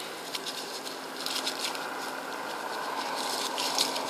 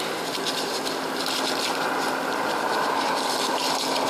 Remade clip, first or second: second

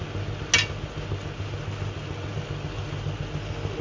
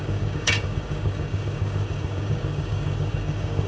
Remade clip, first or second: second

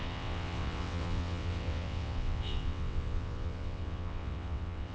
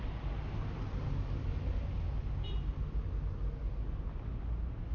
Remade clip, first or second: first